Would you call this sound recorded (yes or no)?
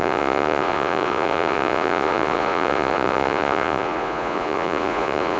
no